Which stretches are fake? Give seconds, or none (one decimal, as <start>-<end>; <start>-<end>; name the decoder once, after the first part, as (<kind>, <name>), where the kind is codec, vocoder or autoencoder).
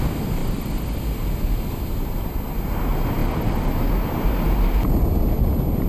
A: 0.4-1.0 (vocoder, BigVGAN v2); 3.2-3.7